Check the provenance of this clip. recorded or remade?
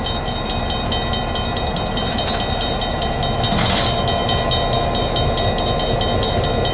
recorded